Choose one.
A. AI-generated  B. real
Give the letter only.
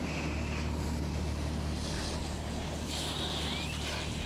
B